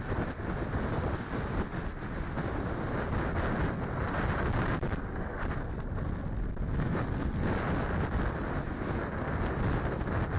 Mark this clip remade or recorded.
recorded